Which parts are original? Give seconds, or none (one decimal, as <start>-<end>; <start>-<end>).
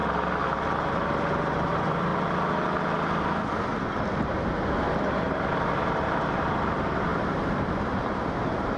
0.0-0.9; 2.1-4.1